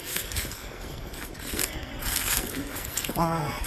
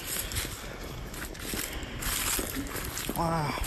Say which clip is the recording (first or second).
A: second